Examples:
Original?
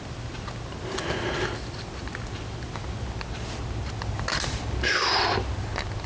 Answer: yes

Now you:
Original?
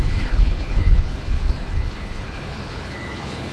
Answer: no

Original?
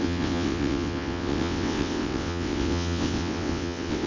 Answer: no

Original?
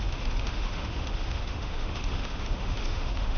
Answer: no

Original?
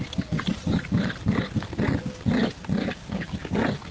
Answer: yes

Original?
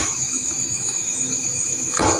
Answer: no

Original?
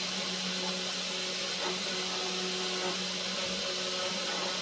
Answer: yes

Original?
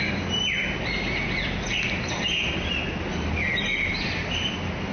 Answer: yes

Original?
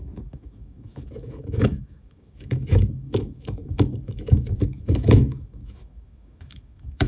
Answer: no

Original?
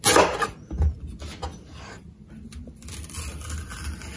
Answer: yes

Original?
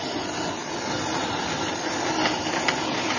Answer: yes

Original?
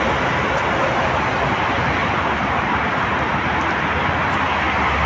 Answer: yes